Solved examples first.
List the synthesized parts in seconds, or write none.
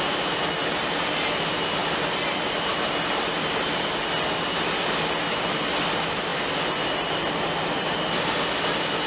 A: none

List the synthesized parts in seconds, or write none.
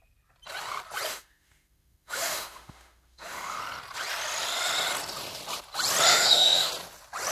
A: 1.1-3.6 (autoencoder, DAC-VAE); 6.1-6.7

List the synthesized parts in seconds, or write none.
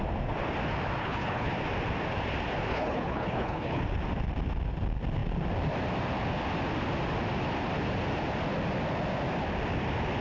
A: 1.0-1.5 (codec, HILCodec); 2.7-3.8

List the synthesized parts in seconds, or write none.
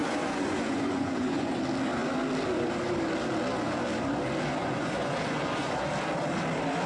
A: 0.0-1.6 (vocoder, Vocos); 4.6-5.9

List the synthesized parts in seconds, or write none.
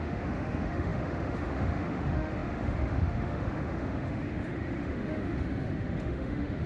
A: 0.0-6.7 (autoencoder, DAC-VAE)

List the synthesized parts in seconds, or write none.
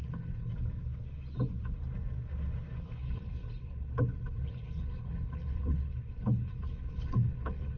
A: 0.0-0.5 (codec, HILCodec); 3.0-7.8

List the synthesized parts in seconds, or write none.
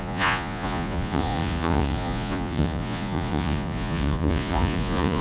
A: 0.0-5.2 (vocoder, Vocos)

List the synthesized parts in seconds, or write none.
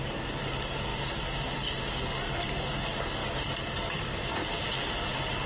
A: 3.2-4.5 (codec, DAC)